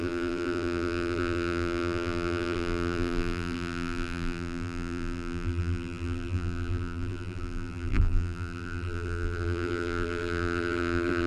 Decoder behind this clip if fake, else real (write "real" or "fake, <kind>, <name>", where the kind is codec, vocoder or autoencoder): fake, vocoder, BigVGAN v2